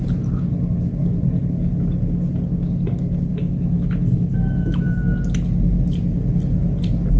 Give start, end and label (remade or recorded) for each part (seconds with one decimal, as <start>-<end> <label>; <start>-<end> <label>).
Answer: 0.0-3.3 recorded; 3.3-5.0 remade; 5.0-7.2 recorded